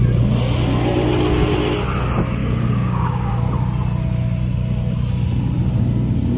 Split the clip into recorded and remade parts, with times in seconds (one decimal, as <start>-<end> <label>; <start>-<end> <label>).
0.0-2.4 recorded; 2.4-3.3 remade; 3.3-6.4 recorded